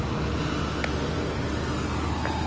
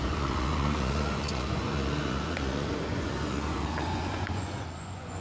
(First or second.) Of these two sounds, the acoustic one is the first